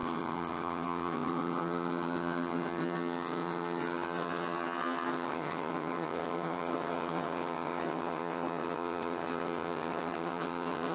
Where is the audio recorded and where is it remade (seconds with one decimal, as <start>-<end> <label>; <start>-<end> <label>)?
0.0-10.9 remade